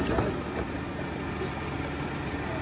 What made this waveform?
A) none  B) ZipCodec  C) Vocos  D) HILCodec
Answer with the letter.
A